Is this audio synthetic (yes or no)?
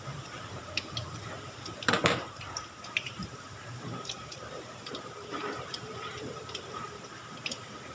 yes